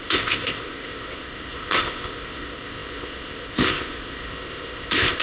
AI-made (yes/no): yes